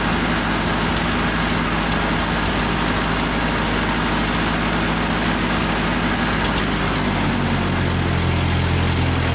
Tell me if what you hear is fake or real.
real